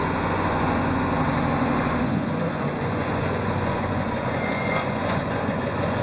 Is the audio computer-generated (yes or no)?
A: yes